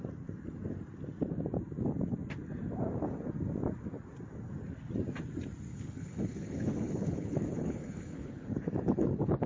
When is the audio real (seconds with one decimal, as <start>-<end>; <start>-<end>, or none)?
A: 0.0-5.7